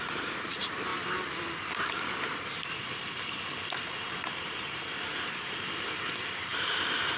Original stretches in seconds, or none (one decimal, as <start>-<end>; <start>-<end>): 0.9-5.2